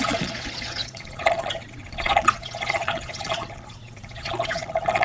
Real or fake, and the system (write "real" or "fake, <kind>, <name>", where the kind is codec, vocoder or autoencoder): fake, vocoder, Vocos